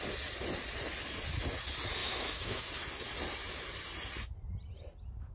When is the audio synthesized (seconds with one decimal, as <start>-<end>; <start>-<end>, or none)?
2.0-2.7